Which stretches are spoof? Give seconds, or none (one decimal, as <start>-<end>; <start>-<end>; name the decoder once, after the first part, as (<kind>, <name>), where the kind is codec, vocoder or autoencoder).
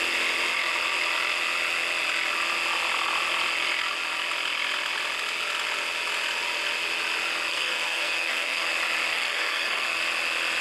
7.5-8.7 (codec, SNAC); 9.1-10.0